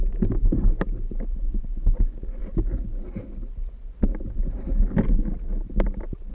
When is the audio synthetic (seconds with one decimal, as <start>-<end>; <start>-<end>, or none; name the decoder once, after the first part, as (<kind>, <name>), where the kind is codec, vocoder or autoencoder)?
none

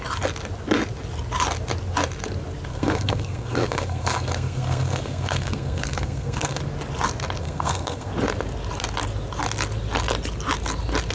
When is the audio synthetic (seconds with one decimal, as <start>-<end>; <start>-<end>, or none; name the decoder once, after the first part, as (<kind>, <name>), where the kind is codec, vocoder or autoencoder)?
2.7-6.6 (codec, SNAC); 7.4-8.1

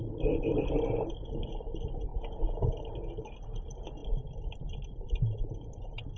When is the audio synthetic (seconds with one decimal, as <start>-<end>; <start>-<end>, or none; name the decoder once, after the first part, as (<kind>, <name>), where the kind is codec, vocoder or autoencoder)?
none

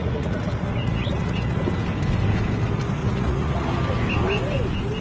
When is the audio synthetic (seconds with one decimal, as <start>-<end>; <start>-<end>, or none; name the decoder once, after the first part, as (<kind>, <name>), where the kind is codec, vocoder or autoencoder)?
0.0-1.6 (vocoder, Vocos); 3.0-3.7

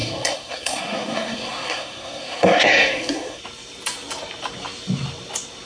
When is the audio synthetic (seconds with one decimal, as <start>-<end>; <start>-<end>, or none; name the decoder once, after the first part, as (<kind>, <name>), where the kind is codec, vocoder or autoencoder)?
0.0-3.4 (codec, SNAC)

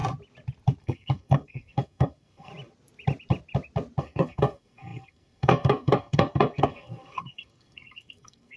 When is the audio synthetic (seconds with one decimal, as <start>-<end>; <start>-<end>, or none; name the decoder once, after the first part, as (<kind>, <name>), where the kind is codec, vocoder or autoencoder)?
0.8-2.5 (codec, SNAC); 4.0-8.6